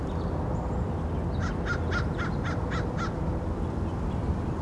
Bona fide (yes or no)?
yes